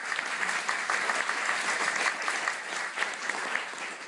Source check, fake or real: real